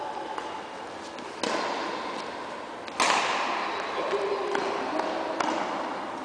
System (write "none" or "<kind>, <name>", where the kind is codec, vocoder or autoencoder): none